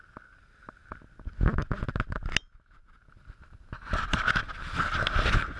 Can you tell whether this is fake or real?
real